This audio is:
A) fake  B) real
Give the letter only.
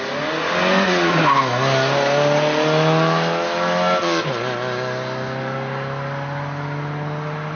B